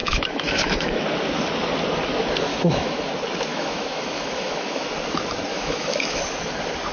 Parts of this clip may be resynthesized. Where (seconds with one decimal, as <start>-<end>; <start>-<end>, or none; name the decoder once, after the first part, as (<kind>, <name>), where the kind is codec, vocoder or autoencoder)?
0.0-1.0 (autoencoder, DAC-VAE); 2.5-3.1; 3.5-4.9; 5.5-6.2